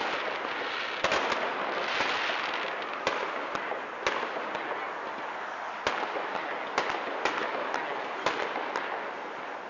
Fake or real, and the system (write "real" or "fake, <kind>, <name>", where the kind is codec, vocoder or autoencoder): real